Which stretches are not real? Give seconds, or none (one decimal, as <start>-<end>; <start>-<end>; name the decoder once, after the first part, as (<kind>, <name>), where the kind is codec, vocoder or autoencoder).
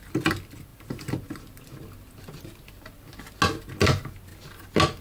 none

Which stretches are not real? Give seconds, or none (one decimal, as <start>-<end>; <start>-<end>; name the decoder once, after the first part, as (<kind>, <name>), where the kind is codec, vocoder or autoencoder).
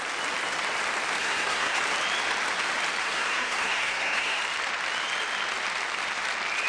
1.2-1.8 (codec, SNAC); 3.0-4.4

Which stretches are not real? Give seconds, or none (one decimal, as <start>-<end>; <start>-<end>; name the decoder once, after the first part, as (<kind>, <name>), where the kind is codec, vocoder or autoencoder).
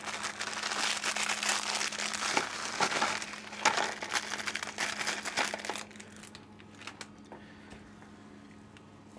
none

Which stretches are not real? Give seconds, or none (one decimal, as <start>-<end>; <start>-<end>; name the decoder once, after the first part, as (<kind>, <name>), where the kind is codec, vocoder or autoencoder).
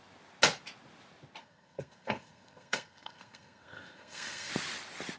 1.4-4.5 (codec, SNAC)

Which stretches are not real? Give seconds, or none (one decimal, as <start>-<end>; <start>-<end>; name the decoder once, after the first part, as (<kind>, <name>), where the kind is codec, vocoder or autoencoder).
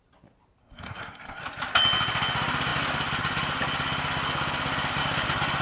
0.6-1.4 (codec, SNAC)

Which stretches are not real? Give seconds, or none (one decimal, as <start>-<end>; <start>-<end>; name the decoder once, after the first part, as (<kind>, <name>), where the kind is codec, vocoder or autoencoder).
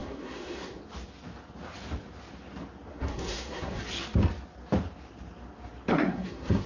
0.0-0.8 (codec, SNAC); 2.9-3.8; 5.9-6.7